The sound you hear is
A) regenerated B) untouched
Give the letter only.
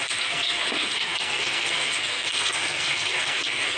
A